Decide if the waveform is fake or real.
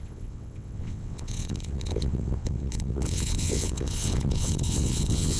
fake